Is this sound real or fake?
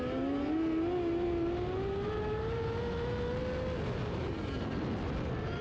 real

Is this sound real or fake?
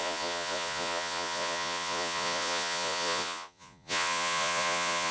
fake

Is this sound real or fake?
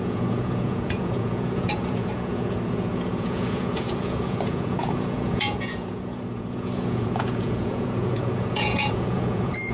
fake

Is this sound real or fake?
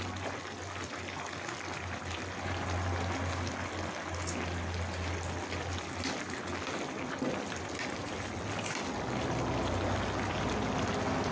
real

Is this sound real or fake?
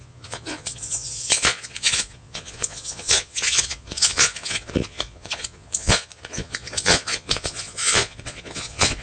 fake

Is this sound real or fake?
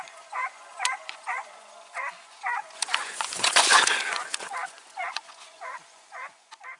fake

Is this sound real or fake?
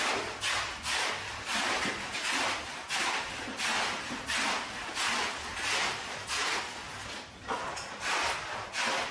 real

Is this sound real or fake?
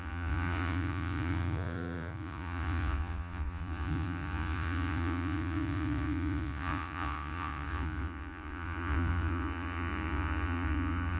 fake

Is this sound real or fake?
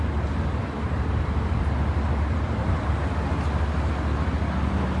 real